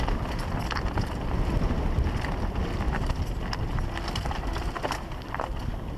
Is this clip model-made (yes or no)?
no